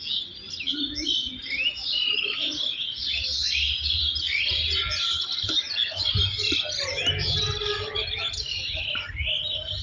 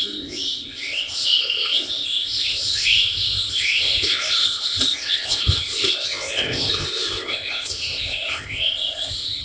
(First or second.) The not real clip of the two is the second